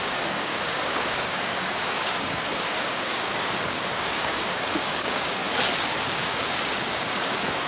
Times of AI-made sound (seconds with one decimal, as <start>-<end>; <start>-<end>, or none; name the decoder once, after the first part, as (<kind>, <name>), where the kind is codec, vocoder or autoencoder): 0.0-5.4 (codec, DAC); 6.0-7.7